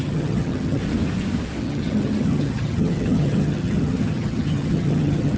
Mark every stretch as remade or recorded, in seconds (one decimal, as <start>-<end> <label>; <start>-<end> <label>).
0.0-0.8 remade; 0.8-1.6 recorded; 1.6-5.4 remade